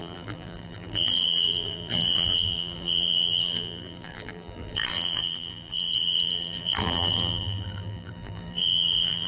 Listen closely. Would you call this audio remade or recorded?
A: remade